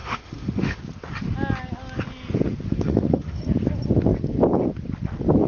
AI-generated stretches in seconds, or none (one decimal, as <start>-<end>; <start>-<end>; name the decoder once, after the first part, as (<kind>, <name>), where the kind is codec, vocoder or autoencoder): 0.0-0.8 (autoencoder, DAC-VAE); 2.7-3.4